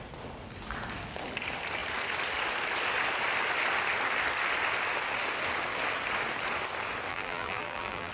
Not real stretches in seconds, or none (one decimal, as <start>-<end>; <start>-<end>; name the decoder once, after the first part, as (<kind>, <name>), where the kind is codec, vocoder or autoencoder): 7.1-8.1 (vocoder, BigVGAN v2)